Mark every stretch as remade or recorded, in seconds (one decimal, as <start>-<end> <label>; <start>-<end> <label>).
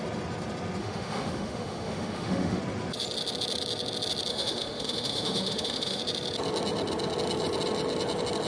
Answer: 0.0-0.8 recorded; 0.8-2.6 remade; 2.6-4.3 recorded; 4.3-6.0 remade; 6.0-8.5 recorded